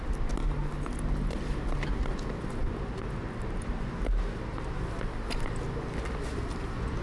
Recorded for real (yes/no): yes